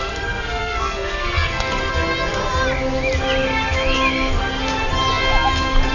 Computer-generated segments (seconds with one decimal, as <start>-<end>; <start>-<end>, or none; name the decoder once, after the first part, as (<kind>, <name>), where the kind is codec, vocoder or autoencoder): 0.6-1.9 (codec, SNAC)